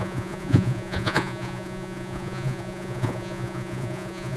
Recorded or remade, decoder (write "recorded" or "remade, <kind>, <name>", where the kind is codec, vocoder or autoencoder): remade, vocoder, Vocos